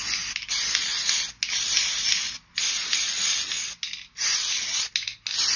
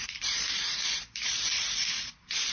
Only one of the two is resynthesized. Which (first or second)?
second